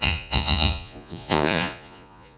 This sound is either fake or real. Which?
fake